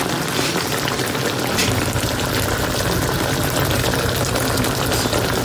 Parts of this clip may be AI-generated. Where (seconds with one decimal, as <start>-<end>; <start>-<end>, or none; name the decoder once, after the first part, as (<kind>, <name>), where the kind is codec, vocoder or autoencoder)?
none